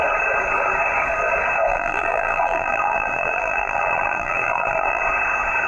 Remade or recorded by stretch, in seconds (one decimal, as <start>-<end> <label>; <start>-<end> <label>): 0.0-1.7 recorded; 1.7-5.0 remade; 5.0-5.7 recorded